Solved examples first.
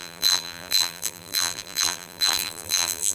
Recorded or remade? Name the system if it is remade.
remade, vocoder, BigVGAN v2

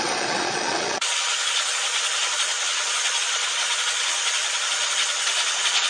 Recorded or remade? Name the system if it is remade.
remade, vocoder, Vocos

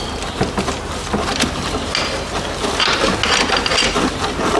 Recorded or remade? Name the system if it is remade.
recorded